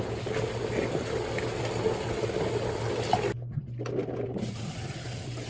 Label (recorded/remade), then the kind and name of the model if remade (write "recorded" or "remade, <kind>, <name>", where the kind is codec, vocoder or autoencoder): recorded